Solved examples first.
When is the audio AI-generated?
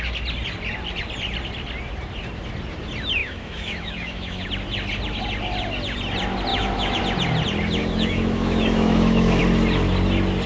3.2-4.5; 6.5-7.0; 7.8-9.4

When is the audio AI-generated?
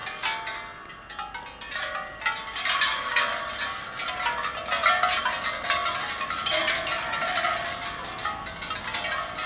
5.2-5.8; 6.6-9.5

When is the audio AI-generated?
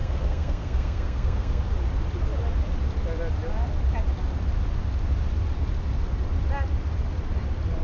0.0-1.6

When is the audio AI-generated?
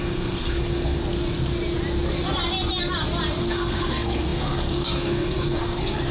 0.0-1.0; 3.4-6.1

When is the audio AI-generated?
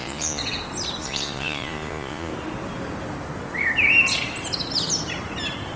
0.0-0.4; 1.0-2.3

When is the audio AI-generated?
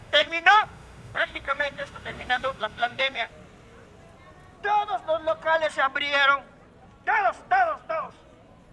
0.0-3.3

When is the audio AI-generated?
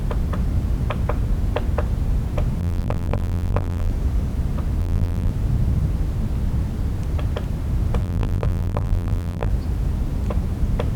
2.6-3.9; 4.8-5.3; 8.0-9.5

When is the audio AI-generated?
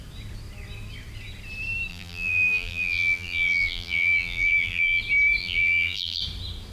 1.9-5.0; 5.4-6.2